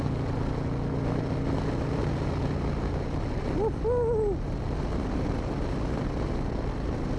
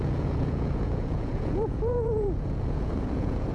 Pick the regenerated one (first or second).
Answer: second